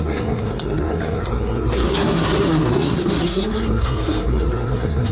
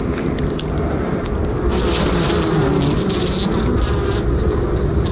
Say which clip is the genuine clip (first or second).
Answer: second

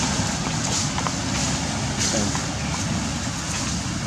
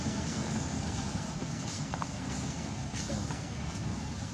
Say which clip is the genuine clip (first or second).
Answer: first